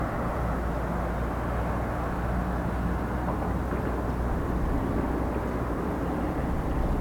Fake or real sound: real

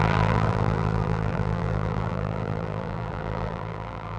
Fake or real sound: fake